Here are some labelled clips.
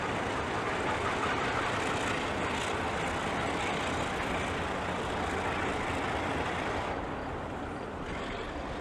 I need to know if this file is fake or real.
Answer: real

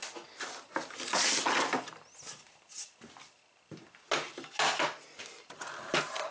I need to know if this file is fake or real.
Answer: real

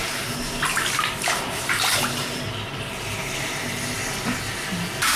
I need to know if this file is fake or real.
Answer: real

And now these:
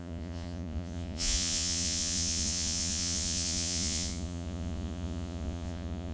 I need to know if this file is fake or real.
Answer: fake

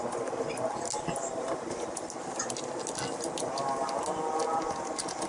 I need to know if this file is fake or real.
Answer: real